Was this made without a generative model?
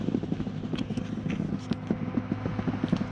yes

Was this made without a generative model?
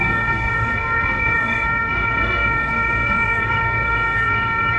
no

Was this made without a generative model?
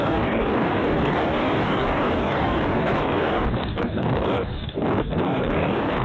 no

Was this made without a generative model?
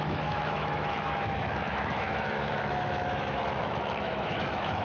no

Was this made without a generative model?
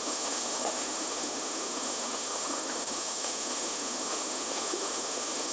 no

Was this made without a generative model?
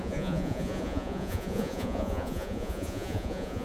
no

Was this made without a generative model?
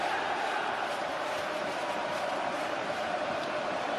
no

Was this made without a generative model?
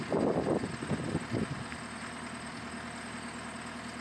yes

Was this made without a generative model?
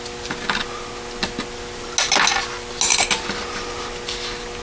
yes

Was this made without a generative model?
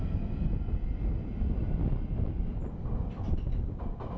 yes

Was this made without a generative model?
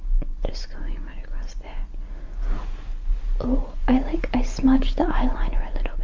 yes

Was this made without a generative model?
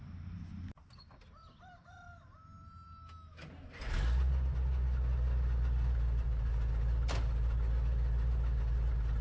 yes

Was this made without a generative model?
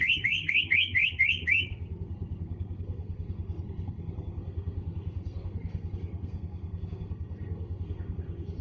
no